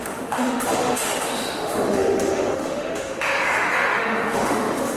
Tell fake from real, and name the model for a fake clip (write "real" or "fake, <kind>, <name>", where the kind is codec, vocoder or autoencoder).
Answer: fake, autoencoder, DAC-VAE